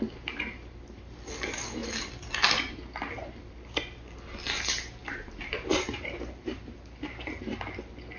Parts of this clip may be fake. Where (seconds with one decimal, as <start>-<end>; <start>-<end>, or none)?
5.0-7.6